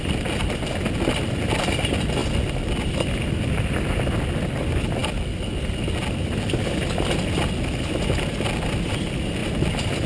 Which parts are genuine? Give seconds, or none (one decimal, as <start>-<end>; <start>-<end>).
0.0-10.1